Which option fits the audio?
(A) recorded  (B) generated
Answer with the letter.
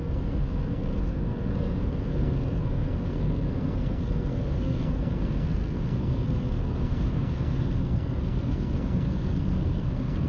B